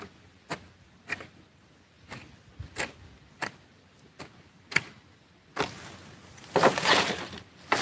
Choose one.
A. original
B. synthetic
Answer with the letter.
A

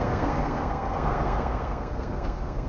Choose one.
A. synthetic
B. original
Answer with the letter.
A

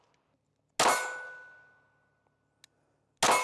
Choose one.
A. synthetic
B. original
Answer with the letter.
B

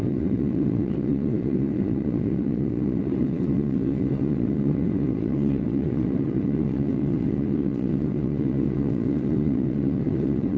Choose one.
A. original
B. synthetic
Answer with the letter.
B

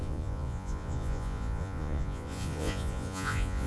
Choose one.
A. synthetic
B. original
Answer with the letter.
A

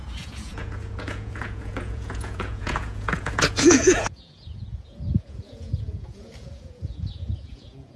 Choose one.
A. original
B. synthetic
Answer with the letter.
B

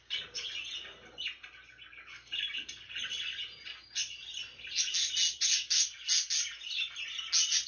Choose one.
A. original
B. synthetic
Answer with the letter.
A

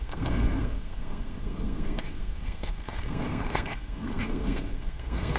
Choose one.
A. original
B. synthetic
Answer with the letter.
B